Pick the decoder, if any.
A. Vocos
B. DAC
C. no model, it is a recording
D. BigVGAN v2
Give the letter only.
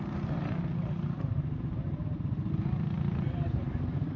D